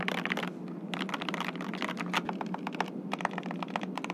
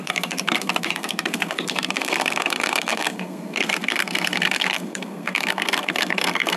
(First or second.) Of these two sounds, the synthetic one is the second